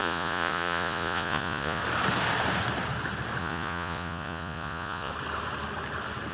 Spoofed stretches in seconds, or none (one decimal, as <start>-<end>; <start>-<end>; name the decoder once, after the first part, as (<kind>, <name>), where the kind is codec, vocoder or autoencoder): 0.0-1.8 (vocoder, Vocos); 3.4-5.1